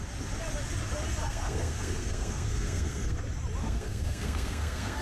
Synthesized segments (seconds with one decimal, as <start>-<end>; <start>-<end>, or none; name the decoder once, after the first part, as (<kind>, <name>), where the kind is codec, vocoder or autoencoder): 1.2-3.2 (codec, SNAC); 3.6-5.0